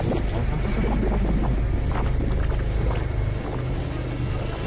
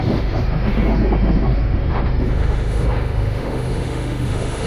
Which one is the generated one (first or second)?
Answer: second